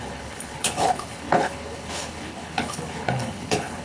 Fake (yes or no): yes